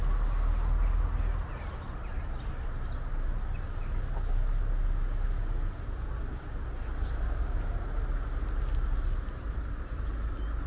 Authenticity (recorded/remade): recorded